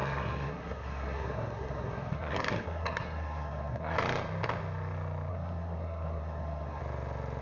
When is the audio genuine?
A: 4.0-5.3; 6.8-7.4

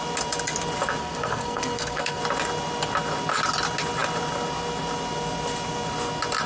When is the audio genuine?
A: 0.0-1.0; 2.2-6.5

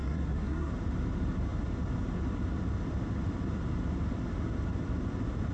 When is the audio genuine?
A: 0.7-5.5

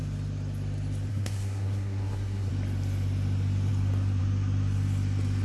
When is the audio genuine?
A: 0.0-1.1; 2.5-5.4